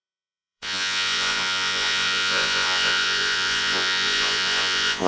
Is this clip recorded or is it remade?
remade